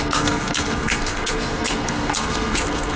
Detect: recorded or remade remade